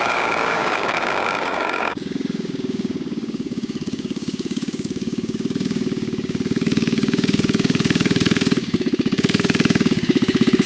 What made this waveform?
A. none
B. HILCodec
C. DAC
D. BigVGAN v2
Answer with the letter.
C